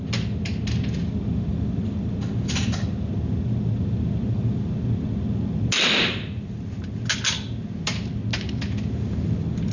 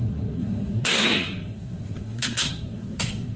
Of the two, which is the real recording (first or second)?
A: first